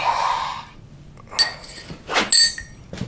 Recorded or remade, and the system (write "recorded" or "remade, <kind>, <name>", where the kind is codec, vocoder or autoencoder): recorded